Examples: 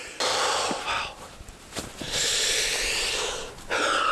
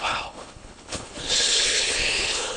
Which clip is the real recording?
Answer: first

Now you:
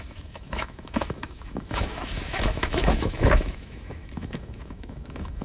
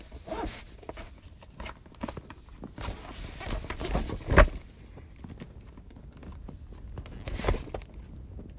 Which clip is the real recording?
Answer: second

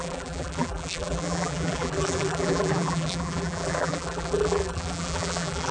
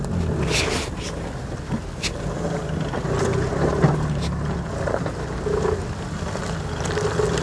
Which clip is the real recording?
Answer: second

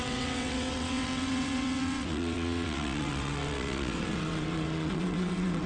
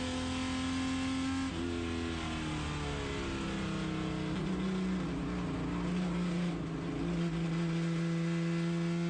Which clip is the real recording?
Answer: second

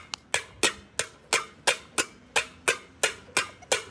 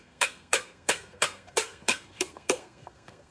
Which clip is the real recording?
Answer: first